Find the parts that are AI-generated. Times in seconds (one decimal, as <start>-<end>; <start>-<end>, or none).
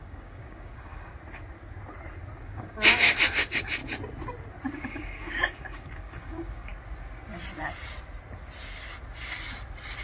0.0-1.1; 2.4-3.8; 4.7-6.7